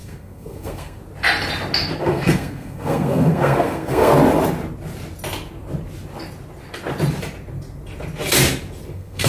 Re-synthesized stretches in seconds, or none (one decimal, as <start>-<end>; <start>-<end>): 0.0-1.0; 2.0-4.1; 8.9-9.3